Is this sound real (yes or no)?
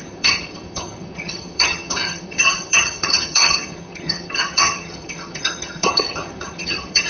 no